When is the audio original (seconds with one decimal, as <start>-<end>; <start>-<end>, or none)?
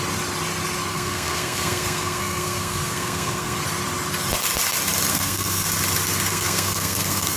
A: 0.0-0.9; 3.6-5.1; 5.7-6.3